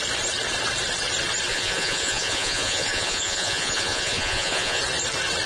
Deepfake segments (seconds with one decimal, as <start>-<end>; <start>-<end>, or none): 1.5-4.8